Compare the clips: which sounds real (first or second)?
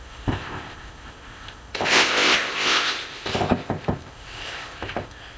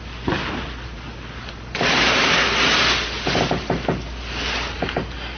second